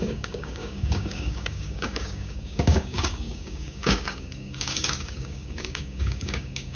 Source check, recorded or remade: remade